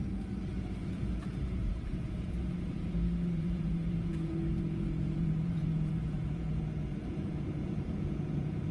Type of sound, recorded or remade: remade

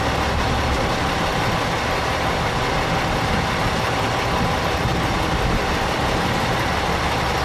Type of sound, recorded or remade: recorded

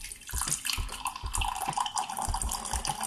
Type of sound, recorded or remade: recorded